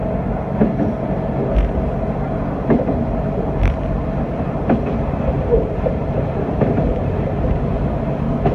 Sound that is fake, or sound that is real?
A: real